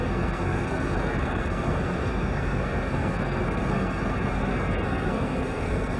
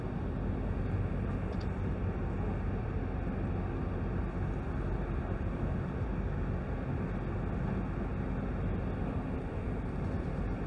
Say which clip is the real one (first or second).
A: second